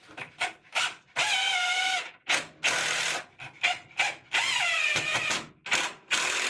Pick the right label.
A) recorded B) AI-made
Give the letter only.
A